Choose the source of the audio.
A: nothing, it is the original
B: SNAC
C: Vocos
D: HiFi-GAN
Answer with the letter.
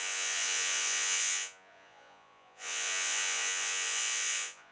C